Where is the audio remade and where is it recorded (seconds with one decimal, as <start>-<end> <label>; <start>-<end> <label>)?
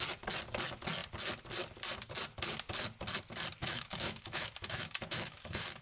0.0-3.6 recorded; 3.6-5.8 remade